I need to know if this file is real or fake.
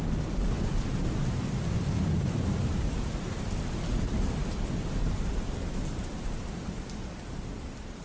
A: real